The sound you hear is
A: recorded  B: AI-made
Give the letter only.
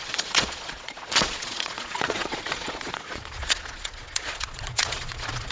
B